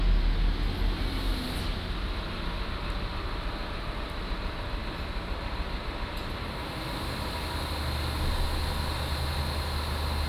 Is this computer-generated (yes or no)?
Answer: no